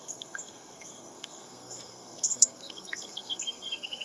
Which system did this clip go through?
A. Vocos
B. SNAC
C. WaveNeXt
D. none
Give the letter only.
B